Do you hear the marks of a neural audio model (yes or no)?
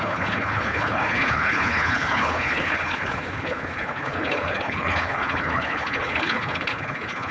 yes